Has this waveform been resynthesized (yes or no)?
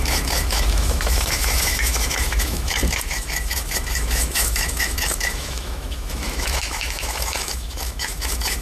yes